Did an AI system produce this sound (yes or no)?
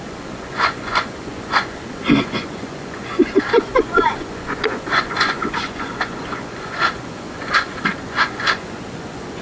yes